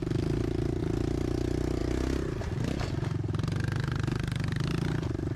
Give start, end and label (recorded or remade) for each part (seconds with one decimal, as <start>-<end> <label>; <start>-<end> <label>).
0.0-5.4 recorded